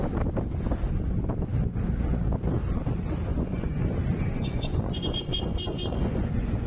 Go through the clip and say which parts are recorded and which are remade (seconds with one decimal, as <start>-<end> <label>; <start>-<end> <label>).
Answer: 0.0-3.3 recorded; 3.3-6.7 remade